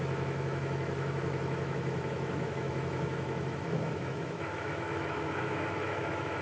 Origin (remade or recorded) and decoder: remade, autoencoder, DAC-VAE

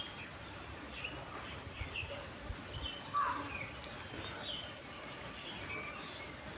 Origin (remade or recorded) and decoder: recorded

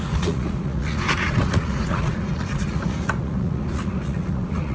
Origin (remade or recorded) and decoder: remade, vocoder, Vocos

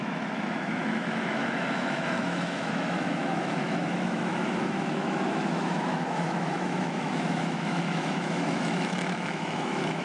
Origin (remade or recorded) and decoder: remade, autoencoder, DAC-VAE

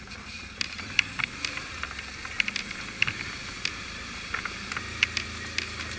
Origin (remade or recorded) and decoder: remade, vocoder, BigVGAN v2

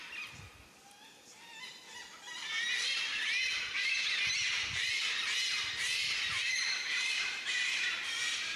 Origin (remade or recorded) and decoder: recorded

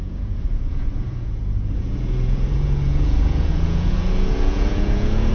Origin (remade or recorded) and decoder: remade, vocoder, Vocos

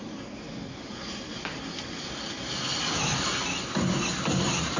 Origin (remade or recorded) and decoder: recorded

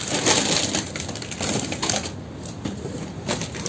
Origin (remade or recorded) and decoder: recorded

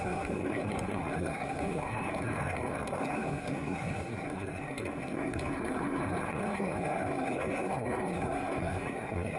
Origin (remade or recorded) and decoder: remade, codec, SNAC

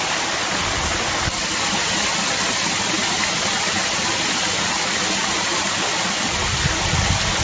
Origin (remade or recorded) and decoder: recorded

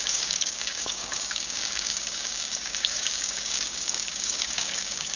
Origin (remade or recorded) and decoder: remade, codec, DAC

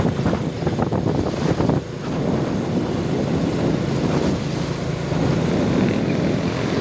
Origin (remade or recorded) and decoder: recorded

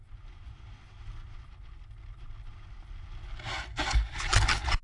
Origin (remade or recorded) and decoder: recorded